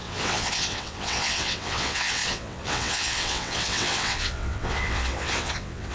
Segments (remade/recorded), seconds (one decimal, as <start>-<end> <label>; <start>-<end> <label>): 0.0-5.9 remade